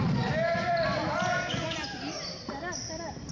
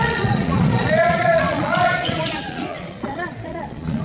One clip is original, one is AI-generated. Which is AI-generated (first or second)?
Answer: second